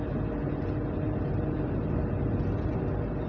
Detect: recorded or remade recorded